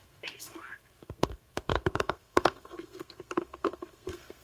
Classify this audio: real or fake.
fake